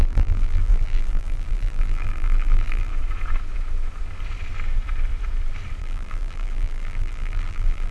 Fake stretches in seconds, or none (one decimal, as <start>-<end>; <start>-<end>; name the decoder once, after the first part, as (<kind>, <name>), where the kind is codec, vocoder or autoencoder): 0.0-2.9 (vocoder, BigVGAN v2); 5.8-7.9